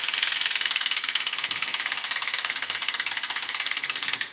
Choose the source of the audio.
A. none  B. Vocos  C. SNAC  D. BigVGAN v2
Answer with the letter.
C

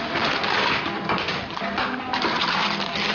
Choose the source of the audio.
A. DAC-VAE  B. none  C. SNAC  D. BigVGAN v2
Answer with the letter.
B